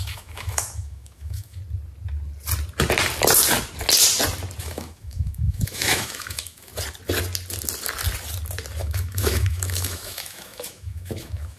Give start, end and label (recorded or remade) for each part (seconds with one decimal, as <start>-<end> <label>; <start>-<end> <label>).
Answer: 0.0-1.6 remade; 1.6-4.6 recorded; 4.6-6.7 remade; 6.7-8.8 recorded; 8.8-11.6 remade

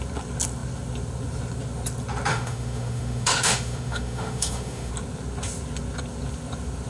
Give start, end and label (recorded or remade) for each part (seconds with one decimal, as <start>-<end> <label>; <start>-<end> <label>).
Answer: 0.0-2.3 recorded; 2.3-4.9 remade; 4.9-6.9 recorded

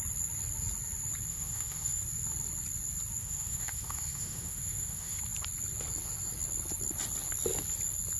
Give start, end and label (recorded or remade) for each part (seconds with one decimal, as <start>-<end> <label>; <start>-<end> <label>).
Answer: 0.0-1.3 recorded; 1.3-2.0 remade; 2.0-3.2 recorded; 3.2-5.2 remade; 5.2-8.2 recorded

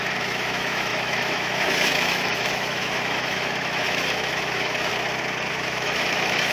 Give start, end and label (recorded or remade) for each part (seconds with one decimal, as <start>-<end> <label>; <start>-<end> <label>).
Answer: 0.0-4.9 remade; 4.9-5.5 recorded; 5.5-6.5 remade

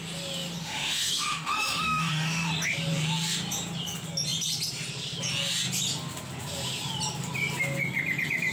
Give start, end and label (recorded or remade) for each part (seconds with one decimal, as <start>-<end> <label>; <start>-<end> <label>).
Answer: 0.0-0.6 recorded; 0.6-2.5 remade; 2.5-8.5 recorded

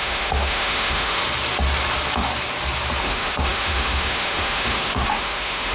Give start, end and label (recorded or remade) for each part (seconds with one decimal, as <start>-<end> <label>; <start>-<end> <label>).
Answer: 0.0-1.2 remade; 1.2-3.0 recorded; 3.0-5.7 remade

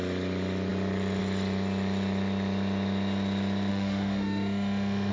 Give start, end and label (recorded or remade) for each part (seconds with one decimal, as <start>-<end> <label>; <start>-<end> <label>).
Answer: 0.0-3.7 recorded; 3.7-5.1 remade